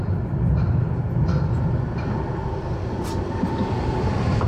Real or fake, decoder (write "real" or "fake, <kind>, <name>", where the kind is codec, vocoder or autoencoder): real